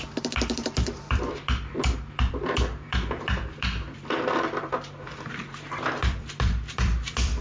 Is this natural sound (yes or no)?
no